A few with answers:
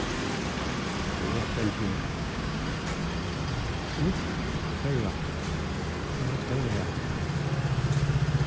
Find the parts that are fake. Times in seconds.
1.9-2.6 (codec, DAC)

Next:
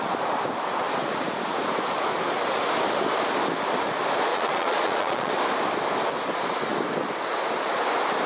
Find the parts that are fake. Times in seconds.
4.3-5.3 (vocoder, Vocos)

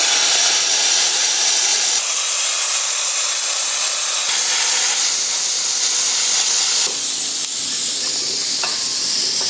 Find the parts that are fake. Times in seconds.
0.0-1.7 (vocoder, BigVGAN v2); 6.6-7.4

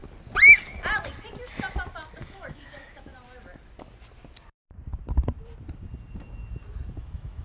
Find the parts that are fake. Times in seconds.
2.2-3.1 (autoencoder, DAC-VAE); 7.0-7.4

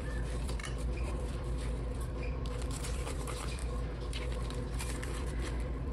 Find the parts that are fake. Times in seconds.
0.0-3.6 (vocoder, BigVGAN v2); 4.8-5.9

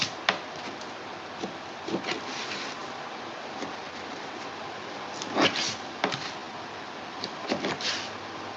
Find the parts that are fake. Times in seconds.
none

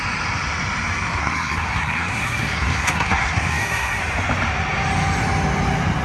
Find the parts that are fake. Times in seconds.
1.2-4.0 (codec, SNAC)

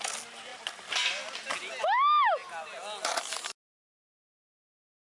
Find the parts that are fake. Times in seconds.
none